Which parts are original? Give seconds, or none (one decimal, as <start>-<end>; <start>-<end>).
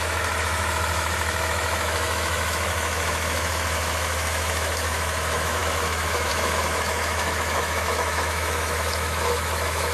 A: none